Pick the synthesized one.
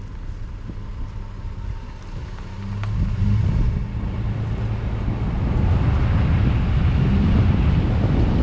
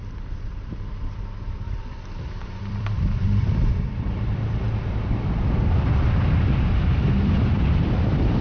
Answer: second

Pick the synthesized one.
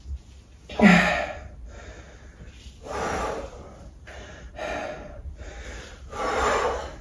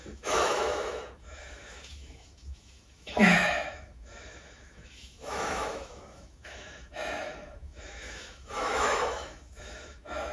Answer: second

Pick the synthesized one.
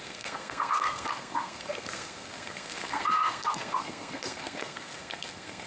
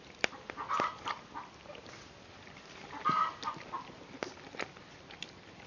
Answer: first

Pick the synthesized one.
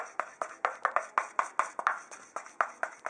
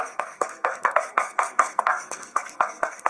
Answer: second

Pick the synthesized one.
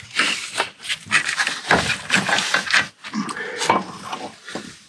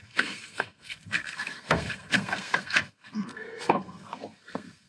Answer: second